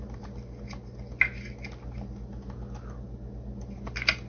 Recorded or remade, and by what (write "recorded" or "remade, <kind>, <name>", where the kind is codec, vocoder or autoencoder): recorded